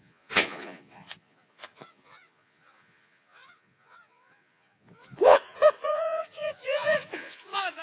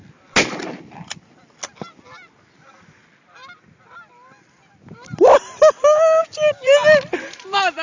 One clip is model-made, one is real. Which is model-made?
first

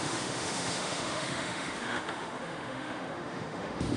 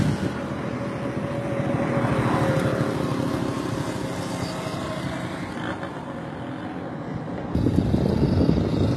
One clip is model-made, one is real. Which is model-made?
first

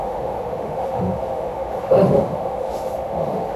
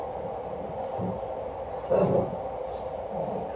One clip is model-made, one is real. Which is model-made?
first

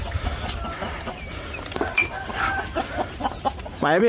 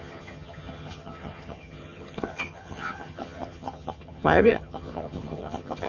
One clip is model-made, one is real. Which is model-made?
second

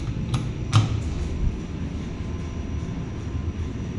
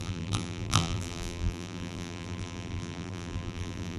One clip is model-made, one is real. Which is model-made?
second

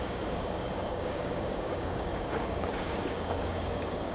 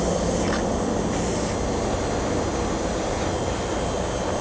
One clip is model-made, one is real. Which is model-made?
first